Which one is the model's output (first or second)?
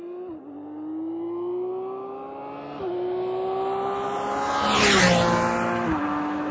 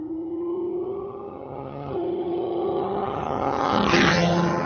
second